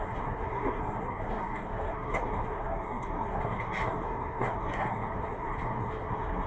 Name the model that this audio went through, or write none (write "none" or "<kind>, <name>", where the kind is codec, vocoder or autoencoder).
codec, SNAC